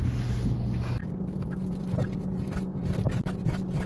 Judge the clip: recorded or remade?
recorded